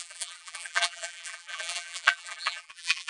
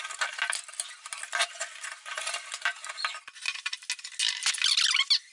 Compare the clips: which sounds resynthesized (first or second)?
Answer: first